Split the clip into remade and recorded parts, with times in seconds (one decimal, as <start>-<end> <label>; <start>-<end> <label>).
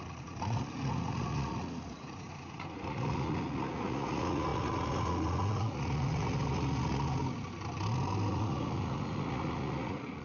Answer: 0.0-7.2 remade; 7.2-8.3 recorded; 8.3-10.2 remade